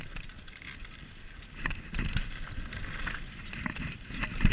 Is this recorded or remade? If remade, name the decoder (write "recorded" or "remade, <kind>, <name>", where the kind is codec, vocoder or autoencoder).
recorded